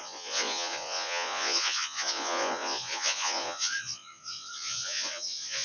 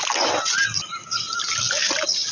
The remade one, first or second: first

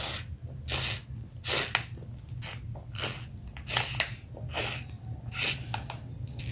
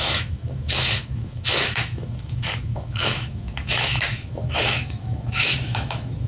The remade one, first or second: second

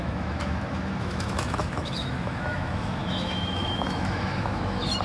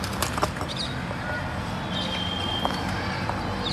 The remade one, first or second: first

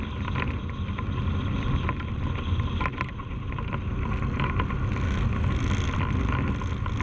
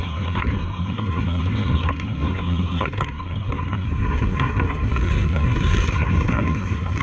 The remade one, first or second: second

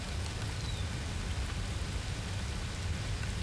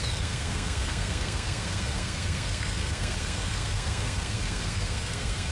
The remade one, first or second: second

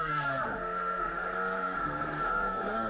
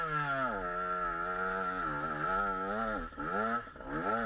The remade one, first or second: first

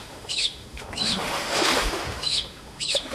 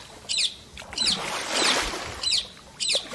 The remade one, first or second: first